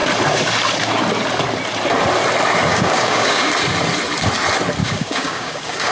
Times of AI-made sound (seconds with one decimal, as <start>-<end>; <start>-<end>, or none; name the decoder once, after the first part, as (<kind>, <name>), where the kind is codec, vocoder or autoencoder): 2.7-3.5 (codec, DAC); 4.8-5.9